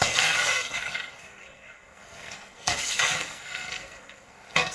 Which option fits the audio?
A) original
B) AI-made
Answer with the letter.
B